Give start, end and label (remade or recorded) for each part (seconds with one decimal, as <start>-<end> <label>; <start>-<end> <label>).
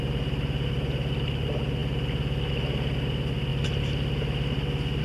0.0-5.0 recorded